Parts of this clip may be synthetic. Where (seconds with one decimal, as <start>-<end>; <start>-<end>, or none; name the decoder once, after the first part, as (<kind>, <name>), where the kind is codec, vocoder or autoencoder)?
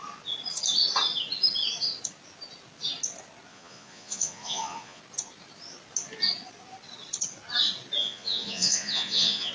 3.5-5.0 (vocoder, Vocos); 8.0-9.5